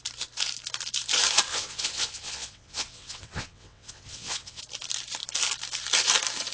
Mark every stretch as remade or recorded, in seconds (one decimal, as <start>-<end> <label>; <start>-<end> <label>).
0.0-1.5 recorded; 1.5-4.6 remade; 4.6-6.5 recorded